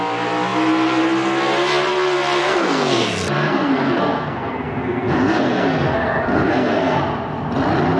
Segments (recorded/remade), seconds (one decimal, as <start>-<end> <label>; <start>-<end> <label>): 0.0-2.4 recorded; 2.4-7.0 remade; 7.0-8.0 recorded